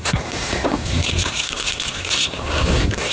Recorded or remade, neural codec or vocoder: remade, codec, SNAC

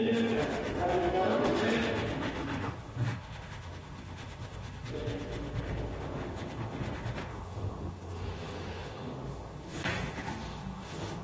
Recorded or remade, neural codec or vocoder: remade, autoencoder, DAC-VAE